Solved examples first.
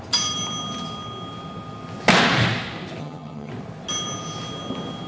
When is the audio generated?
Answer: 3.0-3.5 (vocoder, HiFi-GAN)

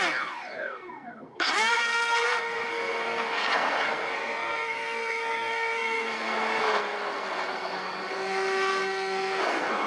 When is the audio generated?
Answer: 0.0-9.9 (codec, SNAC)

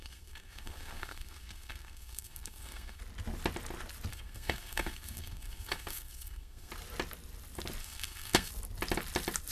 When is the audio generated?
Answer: 0.0-3.0 (codec, SNAC); 4.1-6.7; 7.8-8.5

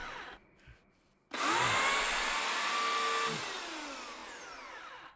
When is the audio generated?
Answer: 0.0-2.7 (vocoder, BigVGAN v2)